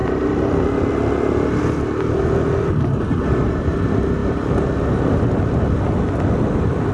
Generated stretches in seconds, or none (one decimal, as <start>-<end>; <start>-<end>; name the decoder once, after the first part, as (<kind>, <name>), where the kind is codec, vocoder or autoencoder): none